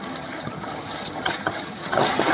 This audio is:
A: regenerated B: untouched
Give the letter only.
A